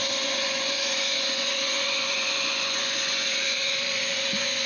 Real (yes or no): no